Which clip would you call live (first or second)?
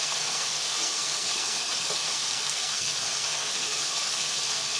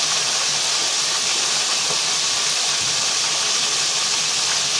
second